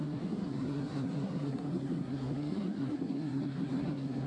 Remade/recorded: remade